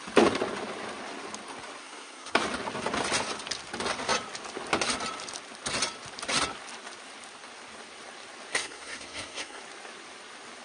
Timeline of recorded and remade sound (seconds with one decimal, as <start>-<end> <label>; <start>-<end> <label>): 0.0-1.8 recorded; 1.8-2.4 remade; 2.4-8.5 recorded; 8.5-9.6 remade; 9.6-10.6 recorded